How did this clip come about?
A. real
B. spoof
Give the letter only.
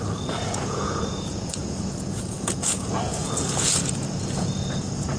B